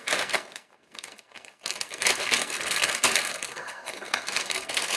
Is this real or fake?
fake